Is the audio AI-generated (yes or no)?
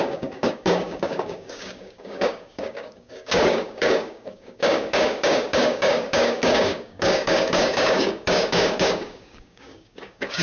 yes